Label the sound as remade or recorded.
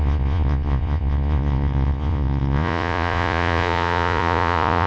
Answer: remade